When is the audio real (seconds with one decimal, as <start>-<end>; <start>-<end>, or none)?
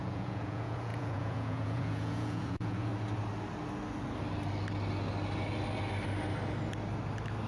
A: 2.9-7.5